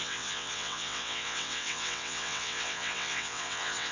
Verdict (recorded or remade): remade